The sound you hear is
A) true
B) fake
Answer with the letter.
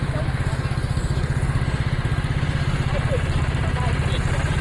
A